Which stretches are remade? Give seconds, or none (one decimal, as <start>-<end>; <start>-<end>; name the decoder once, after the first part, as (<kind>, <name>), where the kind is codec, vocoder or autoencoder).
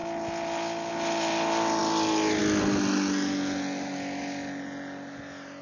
none